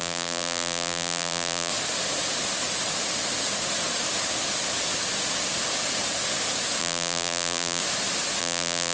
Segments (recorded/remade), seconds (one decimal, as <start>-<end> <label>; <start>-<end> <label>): 0.0-1.7 remade; 1.7-6.8 recorded; 6.8-7.8 remade; 7.8-8.4 recorded; 8.4-8.9 remade